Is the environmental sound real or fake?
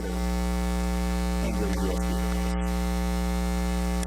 fake